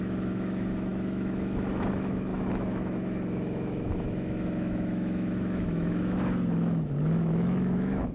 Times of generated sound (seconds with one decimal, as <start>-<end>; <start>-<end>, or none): 0.0-8.1